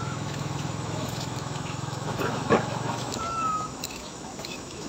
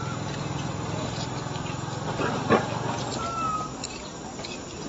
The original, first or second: second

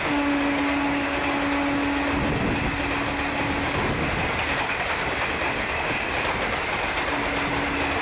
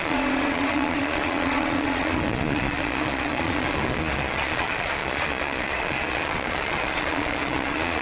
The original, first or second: first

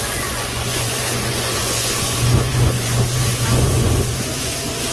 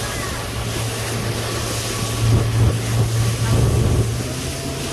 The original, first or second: second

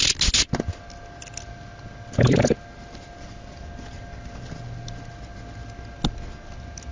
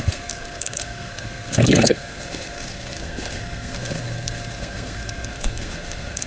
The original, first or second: first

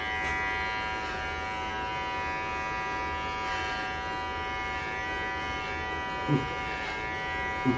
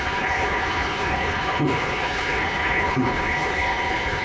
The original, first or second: first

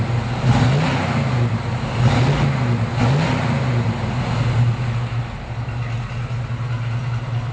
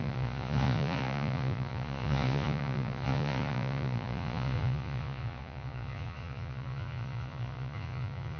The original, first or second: first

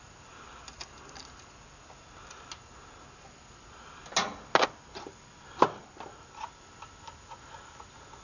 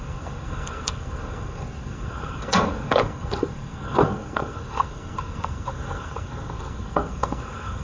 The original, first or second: first